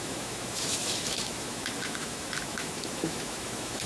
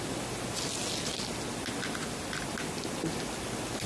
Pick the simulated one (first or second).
first